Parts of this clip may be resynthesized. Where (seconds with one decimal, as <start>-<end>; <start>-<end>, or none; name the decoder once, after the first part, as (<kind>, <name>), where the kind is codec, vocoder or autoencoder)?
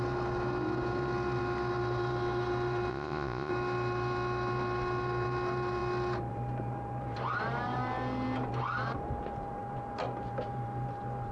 2.9-3.5 (vocoder, Vocos)